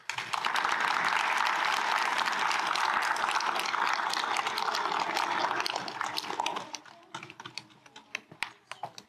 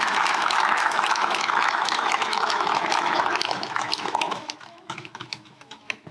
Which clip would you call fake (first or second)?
second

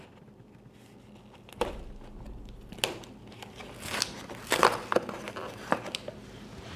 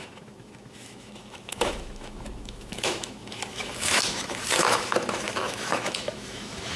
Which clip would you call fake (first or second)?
second